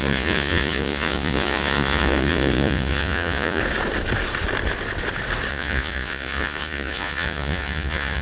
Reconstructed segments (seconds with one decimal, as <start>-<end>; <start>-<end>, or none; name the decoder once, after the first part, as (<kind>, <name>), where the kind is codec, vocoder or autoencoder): 0.0-3.6 (vocoder, Vocos); 5.5-8.2